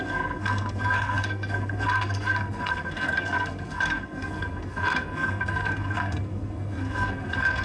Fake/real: fake